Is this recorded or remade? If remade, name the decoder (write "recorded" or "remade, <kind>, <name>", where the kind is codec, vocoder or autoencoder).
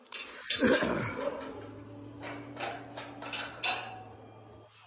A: recorded